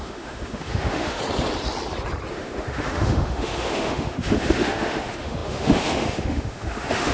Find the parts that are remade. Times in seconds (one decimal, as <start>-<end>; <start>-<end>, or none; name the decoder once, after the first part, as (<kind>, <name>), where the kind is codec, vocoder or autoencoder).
0.0-1.2 (autoencoder, DAC-VAE); 2.3-7.1